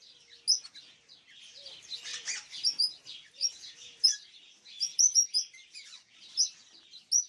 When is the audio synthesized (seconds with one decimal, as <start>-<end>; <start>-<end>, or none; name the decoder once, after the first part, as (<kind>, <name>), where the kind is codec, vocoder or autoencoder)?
2.1-4.5 (vocoder, BigVGAN v2); 4.9-6.4